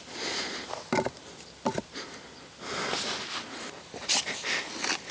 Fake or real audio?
real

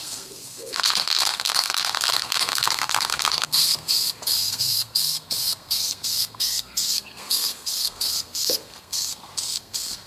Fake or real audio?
fake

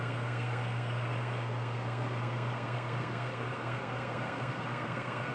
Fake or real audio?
fake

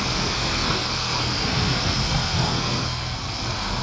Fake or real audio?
fake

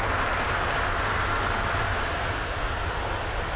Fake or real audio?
real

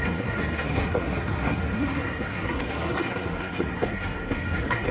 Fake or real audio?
fake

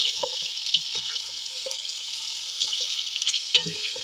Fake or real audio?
fake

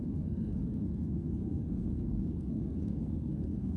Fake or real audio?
fake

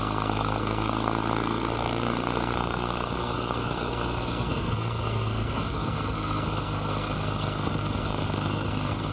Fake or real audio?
fake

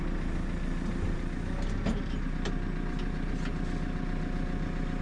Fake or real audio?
real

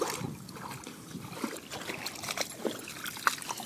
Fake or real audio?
real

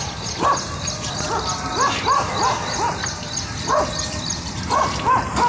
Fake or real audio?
real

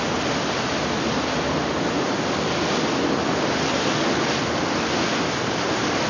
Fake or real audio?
real